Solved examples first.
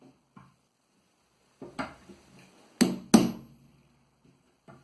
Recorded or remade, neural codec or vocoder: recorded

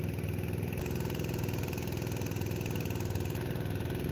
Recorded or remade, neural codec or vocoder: recorded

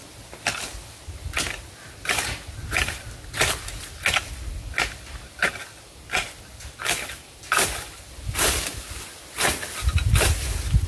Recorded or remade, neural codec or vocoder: recorded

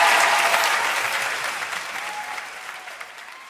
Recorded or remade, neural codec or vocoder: remade, vocoder, BigVGAN v2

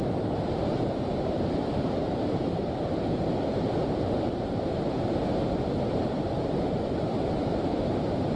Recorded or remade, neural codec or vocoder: remade, vocoder, BigVGAN v2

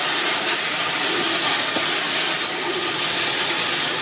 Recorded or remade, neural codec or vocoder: recorded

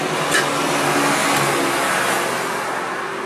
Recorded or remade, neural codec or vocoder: recorded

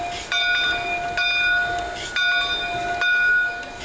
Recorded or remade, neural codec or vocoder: recorded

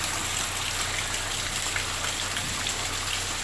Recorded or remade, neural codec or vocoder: recorded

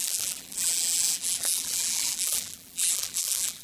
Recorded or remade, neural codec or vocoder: remade, vocoder, BigVGAN v2